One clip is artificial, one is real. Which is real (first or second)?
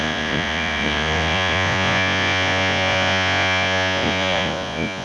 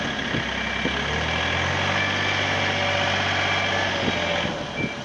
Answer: second